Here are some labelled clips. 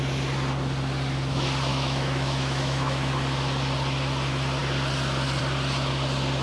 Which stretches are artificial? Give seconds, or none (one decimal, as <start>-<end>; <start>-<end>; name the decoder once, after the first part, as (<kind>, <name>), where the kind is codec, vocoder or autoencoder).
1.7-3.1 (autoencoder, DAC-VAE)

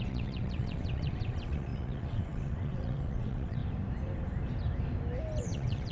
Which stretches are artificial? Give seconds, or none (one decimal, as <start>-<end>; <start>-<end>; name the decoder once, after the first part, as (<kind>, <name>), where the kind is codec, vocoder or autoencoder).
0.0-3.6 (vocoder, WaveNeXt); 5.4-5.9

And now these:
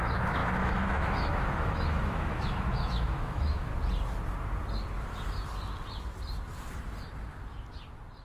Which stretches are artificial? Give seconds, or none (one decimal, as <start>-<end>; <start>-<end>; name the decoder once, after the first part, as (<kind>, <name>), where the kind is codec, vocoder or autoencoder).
0.0-3.7 (autoencoder, DAC-VAE)